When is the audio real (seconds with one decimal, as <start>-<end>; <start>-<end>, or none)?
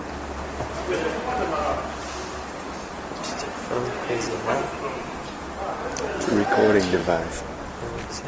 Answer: 0.0-7.0; 7.6-8.3